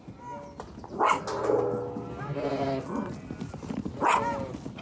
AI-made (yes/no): no